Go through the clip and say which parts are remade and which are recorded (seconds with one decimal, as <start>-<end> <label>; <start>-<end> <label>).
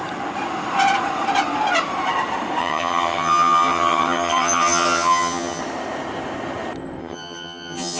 0.0-2.6 recorded; 2.6-5.6 remade; 5.6-7.0 recorded; 7.0-8.0 remade